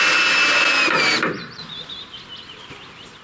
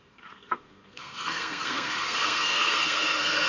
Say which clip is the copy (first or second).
second